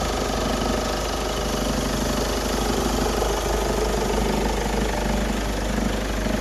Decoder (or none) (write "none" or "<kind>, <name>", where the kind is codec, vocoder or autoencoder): none